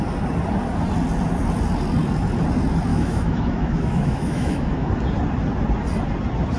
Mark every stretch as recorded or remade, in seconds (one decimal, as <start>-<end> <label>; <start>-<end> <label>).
0.0-2.9 recorded; 2.9-4.9 remade; 4.9-6.6 recorded